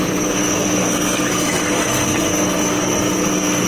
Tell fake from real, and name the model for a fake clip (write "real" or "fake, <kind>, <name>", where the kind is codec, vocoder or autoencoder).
fake, codec, SNAC